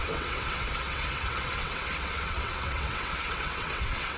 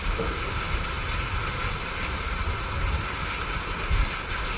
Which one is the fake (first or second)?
first